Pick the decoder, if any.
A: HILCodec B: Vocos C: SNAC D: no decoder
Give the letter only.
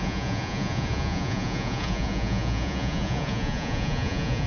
B